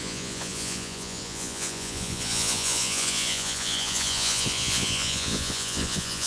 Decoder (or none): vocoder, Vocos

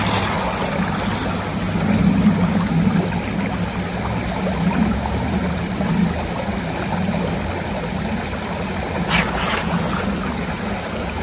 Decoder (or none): none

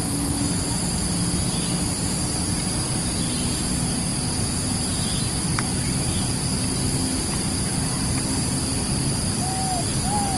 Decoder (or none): none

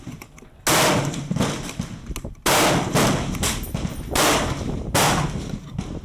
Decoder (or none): none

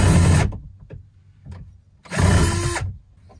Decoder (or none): none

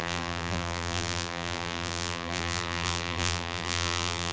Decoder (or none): vocoder, BigVGAN v2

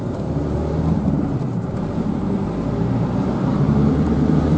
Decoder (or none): vocoder, BigVGAN v2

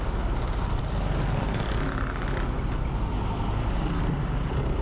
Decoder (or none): none